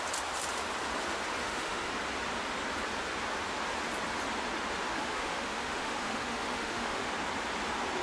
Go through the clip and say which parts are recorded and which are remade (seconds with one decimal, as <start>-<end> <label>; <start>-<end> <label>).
0.0-1.4 recorded; 1.4-1.9 remade; 1.9-4.9 recorded; 4.9-7.1 remade; 7.1-8.0 recorded